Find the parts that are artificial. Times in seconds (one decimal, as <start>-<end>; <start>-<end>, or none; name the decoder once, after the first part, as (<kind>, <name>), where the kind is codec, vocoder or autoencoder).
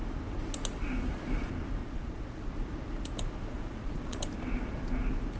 1.8-2.5 (vocoder, Vocos); 3.4-4.2